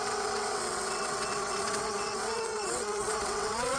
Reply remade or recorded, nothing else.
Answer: remade